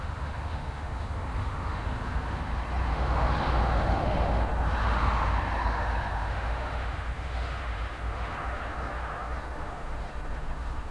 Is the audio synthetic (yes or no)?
yes